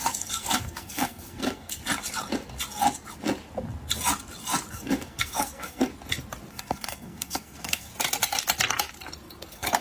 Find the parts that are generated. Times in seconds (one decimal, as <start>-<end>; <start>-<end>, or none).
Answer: 0.0-1.8; 4.7-5.9; 6.5-7.9; 9.4-9.8